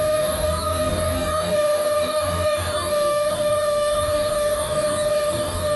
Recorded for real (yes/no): no